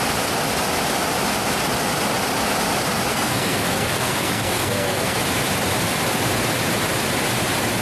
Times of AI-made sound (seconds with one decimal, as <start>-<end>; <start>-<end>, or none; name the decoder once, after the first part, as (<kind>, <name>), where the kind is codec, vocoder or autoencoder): 3.1-5.2 (codec, SNAC)